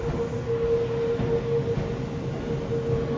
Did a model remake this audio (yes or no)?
no